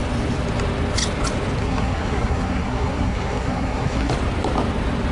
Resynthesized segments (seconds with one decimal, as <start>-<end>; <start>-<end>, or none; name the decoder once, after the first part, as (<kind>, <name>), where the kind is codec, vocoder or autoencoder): 1.6-4.1 (codec, SNAC)